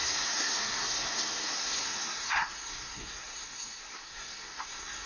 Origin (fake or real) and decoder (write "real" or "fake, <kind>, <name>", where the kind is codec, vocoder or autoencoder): fake, codec, SNAC